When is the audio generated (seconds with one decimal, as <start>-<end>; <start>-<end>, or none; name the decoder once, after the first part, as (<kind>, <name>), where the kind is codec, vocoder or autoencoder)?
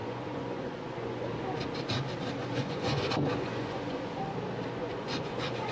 0.0-1.3 (vocoder, Vocos); 2.4-4.2; 4.8-5.7